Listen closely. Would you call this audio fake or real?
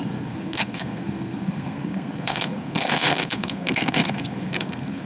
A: fake